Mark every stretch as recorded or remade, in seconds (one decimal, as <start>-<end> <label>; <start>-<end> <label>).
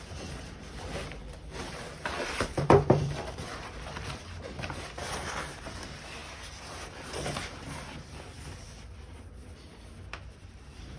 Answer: 0.0-1.2 recorded; 1.2-4.5 remade; 4.5-11.0 recorded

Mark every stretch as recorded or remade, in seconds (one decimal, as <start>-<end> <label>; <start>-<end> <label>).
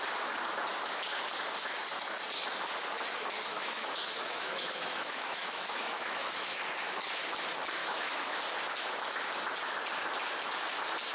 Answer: 0.0-3.5 recorded; 3.5-6.6 remade; 6.6-7.8 recorded; 7.8-8.4 remade; 8.4-11.1 recorded